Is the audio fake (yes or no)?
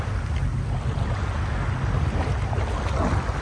no